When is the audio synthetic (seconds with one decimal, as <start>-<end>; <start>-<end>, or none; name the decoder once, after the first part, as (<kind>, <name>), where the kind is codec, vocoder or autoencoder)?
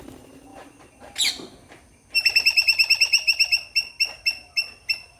none